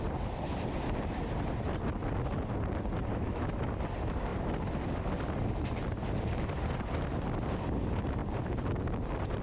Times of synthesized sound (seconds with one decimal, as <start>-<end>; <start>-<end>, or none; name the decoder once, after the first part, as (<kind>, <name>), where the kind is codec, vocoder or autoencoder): 3.1-3.7 (autoencoder, DAC-VAE)